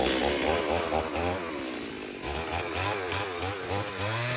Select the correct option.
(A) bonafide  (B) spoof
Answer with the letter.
A